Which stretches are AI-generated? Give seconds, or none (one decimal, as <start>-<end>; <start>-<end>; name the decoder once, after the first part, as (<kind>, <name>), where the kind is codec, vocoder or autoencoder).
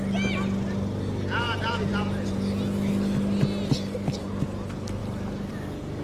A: none